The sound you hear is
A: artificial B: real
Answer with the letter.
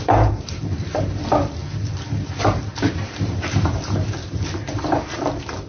A